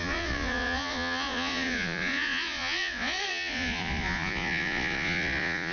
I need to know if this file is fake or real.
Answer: fake